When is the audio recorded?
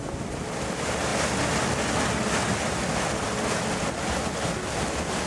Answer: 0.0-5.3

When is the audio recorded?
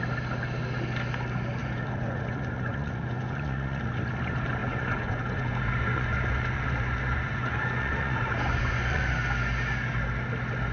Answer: 0.0-1.6; 3.8-4.6; 9.1-10.7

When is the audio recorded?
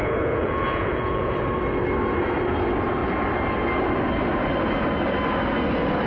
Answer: 1.4-6.1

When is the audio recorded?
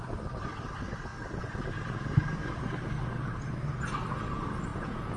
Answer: 0.0-4.7